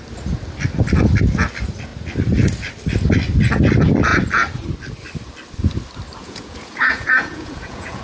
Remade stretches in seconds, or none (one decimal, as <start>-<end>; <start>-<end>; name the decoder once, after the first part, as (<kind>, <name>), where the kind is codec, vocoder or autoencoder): 6.2-8.0 (vocoder, Vocos)